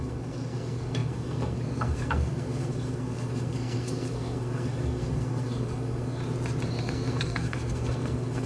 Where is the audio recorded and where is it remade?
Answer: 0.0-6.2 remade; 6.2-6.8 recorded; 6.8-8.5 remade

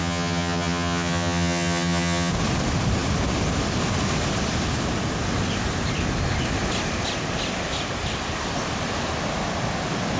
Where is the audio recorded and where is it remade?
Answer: 0.0-2.3 remade; 2.3-10.2 recorded

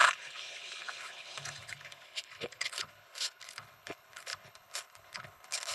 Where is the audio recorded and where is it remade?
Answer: 0.0-5.7 remade

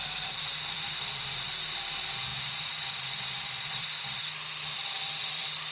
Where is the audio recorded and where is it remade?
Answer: 0.0-5.7 remade